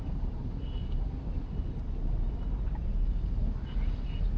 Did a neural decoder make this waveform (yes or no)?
no